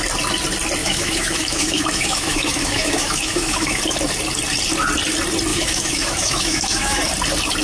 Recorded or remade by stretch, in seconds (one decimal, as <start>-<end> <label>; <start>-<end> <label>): 0.0-0.8 recorded; 0.8-3.8 remade; 3.8-5.5 recorded; 5.5-7.0 remade; 7.0-7.6 recorded